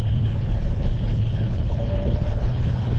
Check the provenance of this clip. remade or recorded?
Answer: remade